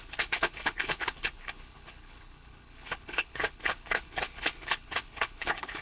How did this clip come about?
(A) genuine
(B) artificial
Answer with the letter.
B